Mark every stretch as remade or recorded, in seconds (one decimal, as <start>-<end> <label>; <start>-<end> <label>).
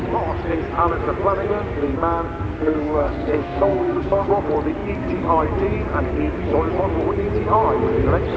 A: 0.0-2.5 recorded; 2.5-4.3 remade; 4.3-8.4 recorded